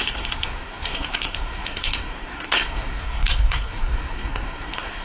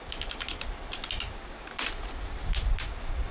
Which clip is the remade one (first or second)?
first